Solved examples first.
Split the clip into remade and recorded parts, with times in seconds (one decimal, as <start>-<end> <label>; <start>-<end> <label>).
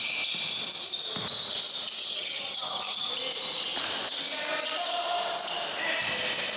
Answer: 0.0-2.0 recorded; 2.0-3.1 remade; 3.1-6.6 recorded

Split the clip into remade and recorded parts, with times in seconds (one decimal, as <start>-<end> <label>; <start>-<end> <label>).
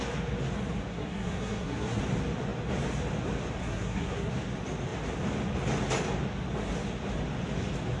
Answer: 0.0-0.9 recorded; 0.9-2.0 remade; 2.0-3.6 recorded; 3.6-4.3 remade; 4.3-8.0 recorded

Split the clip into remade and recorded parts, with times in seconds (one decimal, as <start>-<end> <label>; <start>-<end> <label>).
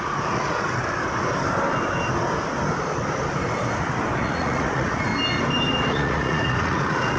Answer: 0.0-0.8 remade; 0.8-4.2 recorded; 4.2-5.1 remade; 5.1-5.9 recorded; 5.9-7.2 remade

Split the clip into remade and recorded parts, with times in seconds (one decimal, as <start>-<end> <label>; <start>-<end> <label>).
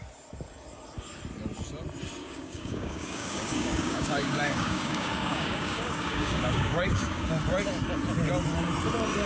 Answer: 0.0-2.2 recorded; 2.2-7.3 remade; 7.3-9.3 recorded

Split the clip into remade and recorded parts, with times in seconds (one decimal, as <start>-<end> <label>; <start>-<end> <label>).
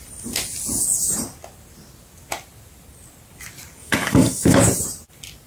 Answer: 0.0-3.8 recorded; 3.8-4.6 remade; 4.6-5.5 recorded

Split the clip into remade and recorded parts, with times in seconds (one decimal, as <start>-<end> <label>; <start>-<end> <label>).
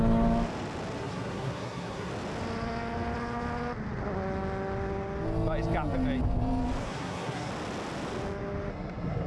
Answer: 0.0-1.0 recorded; 1.0-2.1 remade; 2.1-6.8 recorded; 6.8-7.5 remade; 7.5-8.7 recorded; 8.7-9.3 remade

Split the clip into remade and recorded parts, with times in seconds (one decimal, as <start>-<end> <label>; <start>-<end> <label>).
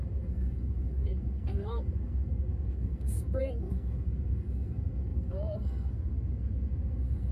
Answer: 0.0-7.3 remade